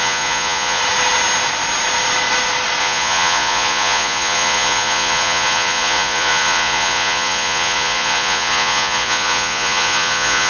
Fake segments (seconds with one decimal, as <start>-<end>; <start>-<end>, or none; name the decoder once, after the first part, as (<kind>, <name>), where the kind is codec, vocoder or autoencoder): 0.0-0.8 (vocoder, Vocos); 2.8-10.5